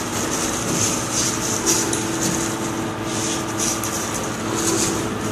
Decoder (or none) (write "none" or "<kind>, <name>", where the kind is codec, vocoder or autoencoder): none